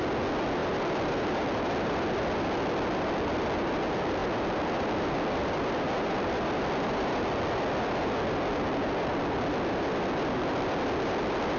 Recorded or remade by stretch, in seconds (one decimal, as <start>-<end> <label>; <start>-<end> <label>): 0.0-11.6 remade